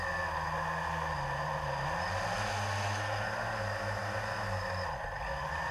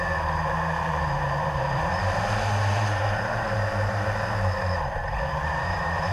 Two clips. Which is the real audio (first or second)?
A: first